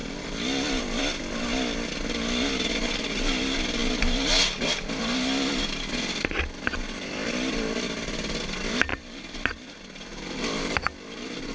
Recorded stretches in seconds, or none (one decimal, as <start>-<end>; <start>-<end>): 0.0-11.5